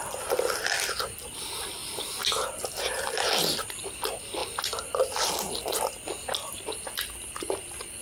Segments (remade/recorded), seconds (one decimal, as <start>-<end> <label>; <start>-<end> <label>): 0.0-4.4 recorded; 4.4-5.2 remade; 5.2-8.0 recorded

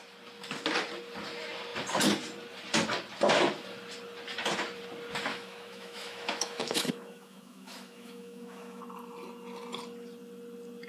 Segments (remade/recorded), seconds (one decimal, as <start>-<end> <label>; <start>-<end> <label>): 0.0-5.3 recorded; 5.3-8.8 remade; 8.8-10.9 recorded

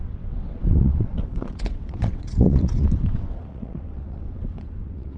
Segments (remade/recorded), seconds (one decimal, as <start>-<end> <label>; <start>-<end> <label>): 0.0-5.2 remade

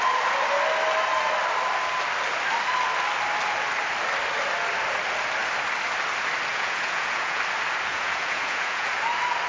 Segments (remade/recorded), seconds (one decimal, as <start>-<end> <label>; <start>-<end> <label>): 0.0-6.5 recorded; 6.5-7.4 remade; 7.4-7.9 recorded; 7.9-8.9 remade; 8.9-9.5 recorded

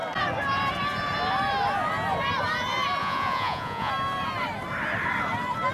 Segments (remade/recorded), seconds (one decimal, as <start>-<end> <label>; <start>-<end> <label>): 0.0-3.0 recorded; 3.0-3.9 remade; 3.9-5.7 recorded

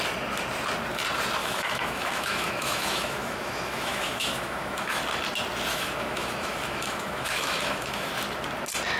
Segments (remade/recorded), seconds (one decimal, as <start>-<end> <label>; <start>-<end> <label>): 0.0-1.4 recorded; 1.4-5.0 remade; 5.0-5.7 recorded; 5.7-8.1 remade; 8.1-9.0 recorded